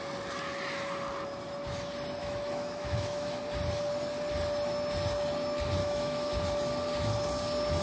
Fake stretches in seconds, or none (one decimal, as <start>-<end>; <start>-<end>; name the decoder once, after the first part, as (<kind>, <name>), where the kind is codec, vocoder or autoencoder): 2.2-3.4 (autoencoder, DAC-VAE); 5.8-6.4